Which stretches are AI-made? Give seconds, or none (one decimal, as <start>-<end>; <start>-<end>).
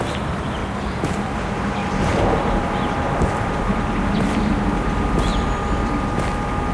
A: 0.6-1.3; 1.8-4.5; 5.3-6.0